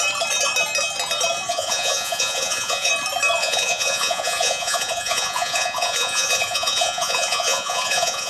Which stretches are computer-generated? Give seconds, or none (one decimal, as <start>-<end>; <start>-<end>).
1.5-2.9; 3.4-8.3